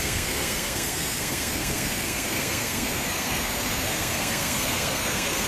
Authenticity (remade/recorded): remade